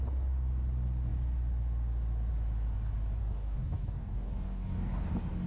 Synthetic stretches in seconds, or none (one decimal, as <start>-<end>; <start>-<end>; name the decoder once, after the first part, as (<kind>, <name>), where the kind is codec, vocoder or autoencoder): 3.2-5.1 (codec, DAC)